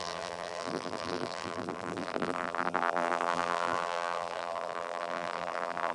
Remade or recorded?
remade